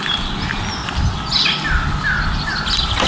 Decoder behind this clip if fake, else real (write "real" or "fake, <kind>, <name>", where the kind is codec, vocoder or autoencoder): real